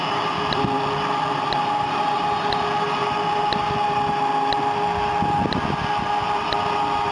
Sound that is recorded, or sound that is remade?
remade